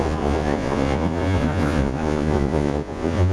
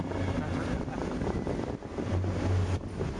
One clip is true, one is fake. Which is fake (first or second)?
first